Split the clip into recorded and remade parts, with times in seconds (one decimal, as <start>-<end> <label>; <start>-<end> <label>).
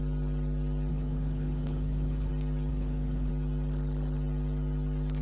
0.0-0.9 recorded; 0.9-2.3 remade; 2.3-2.7 recorded; 2.7-3.3 remade; 3.3-5.2 recorded